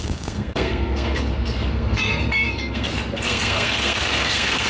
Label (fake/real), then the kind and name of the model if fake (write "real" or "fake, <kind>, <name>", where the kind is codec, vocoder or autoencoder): fake, codec, SNAC